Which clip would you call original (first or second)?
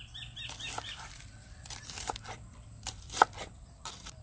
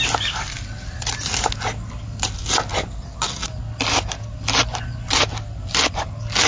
second